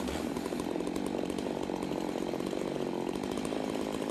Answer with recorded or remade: recorded